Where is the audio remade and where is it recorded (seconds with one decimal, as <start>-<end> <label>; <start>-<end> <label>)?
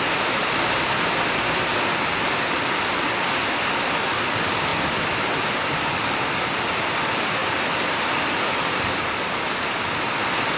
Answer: 0.0-7.4 recorded; 7.4-8.8 remade; 8.8-10.6 recorded